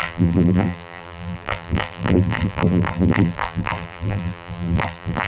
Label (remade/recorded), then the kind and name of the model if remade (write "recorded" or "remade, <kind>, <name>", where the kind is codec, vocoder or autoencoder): remade, vocoder, BigVGAN v2